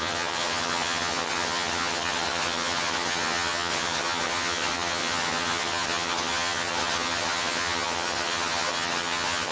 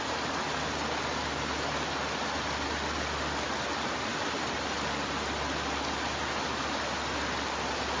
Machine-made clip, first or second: first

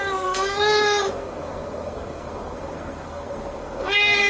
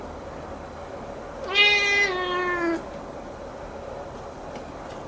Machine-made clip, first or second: first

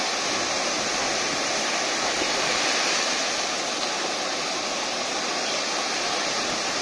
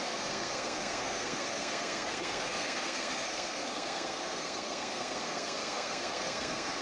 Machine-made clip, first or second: second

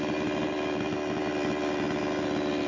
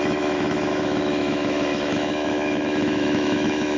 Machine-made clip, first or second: second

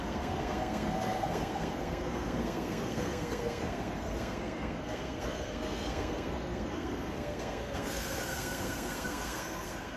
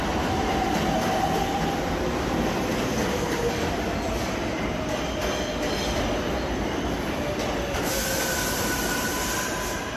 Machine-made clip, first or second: first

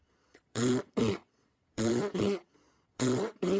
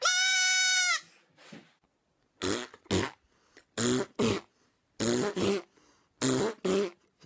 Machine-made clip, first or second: first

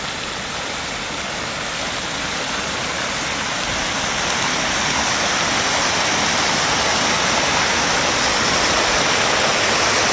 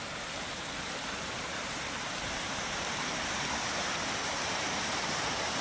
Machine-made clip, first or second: second